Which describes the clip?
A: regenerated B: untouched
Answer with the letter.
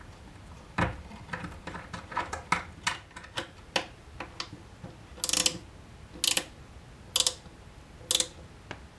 B